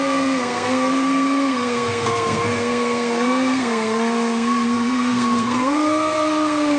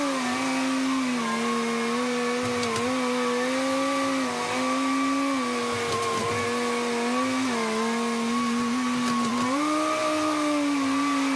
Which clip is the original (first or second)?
second